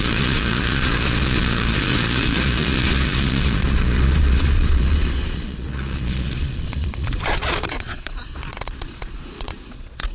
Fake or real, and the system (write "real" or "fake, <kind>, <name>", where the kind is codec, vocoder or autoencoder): fake, vocoder, Vocos